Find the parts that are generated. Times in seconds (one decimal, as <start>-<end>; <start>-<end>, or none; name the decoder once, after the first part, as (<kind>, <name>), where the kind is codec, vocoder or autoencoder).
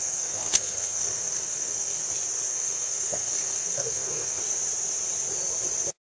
0.0-2.0 (codec, SNAC); 2.5-4.4